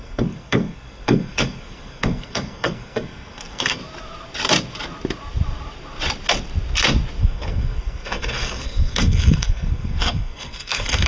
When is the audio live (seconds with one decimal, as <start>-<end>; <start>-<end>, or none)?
3.8-7.2